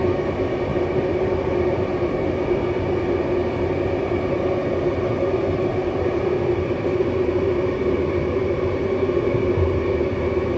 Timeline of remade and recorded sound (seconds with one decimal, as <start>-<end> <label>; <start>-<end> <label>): 0.0-0.7 recorded; 0.7-1.9 remade; 1.9-5.8 recorded; 5.8-7.5 remade; 7.5-10.6 recorded